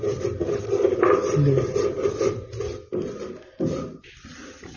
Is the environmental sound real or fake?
real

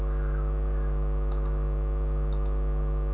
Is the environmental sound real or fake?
real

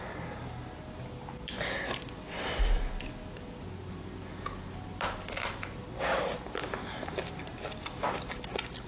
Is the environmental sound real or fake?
real